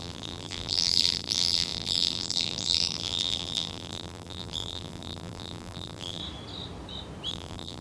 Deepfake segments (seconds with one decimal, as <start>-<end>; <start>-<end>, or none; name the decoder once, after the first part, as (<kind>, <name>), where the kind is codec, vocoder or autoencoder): 0.0-6.2 (vocoder, BigVGAN v2); 7.3-7.8